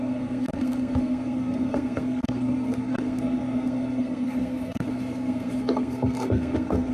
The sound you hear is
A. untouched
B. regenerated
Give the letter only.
B